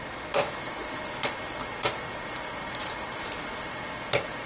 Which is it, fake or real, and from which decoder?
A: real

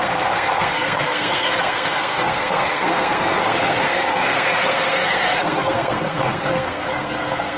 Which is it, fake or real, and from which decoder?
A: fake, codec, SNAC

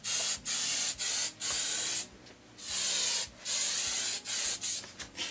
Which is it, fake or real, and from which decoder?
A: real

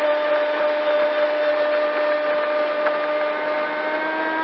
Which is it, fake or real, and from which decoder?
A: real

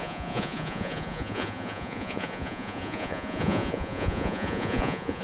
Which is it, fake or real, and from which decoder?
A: fake, vocoder, Vocos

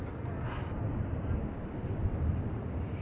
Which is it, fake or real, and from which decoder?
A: real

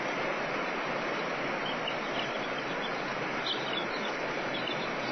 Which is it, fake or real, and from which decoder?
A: real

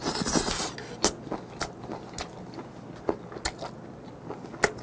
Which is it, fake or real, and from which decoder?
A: real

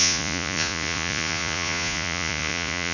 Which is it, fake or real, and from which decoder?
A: fake, vocoder, Vocos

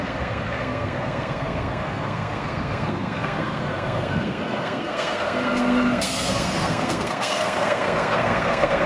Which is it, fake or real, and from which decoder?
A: fake, codec, SNAC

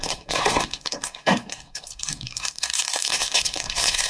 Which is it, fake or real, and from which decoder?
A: fake, codec, SNAC